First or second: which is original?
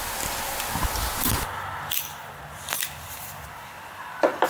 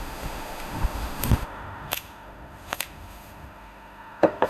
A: first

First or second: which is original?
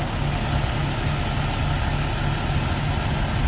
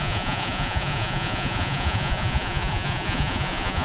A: first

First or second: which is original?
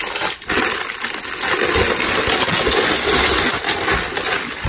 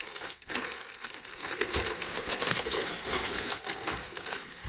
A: first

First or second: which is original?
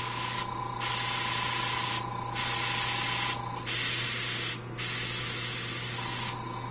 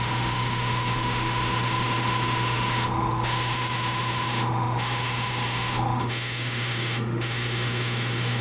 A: first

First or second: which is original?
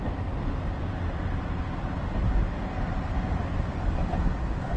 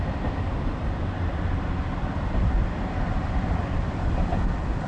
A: first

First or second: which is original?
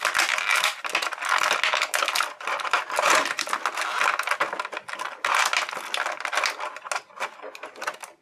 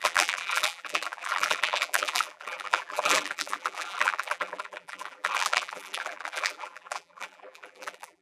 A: first